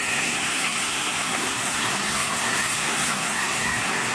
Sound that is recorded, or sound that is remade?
remade